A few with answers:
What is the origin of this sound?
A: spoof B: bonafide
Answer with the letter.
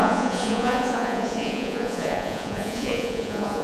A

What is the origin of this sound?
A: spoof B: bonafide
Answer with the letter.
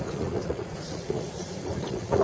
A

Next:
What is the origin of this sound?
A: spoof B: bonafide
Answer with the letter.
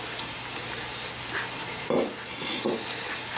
B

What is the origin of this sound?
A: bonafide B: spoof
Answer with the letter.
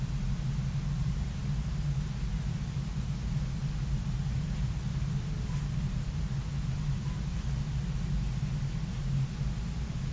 A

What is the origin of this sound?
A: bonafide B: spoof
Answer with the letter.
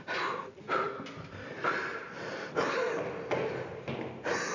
A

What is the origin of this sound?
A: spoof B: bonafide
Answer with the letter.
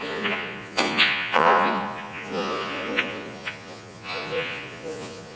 A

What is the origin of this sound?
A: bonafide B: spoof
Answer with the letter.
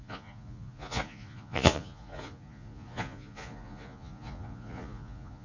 B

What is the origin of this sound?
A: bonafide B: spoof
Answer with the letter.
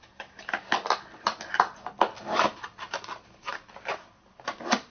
A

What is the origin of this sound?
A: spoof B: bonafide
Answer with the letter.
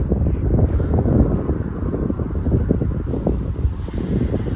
B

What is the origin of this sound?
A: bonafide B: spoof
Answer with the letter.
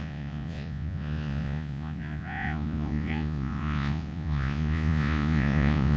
B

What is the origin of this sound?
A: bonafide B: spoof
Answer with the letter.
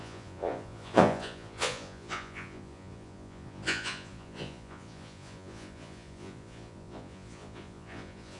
B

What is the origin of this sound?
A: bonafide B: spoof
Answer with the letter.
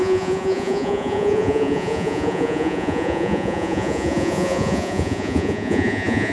B